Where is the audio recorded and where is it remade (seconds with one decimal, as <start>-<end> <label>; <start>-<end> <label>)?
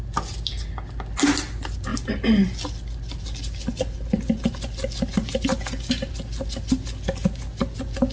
0.0-8.1 recorded